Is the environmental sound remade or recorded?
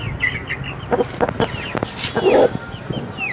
recorded